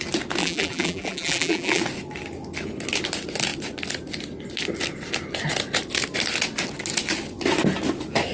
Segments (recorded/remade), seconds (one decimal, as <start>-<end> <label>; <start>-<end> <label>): 0.0-0.4 recorded; 0.4-1.8 remade; 1.8-8.3 recorded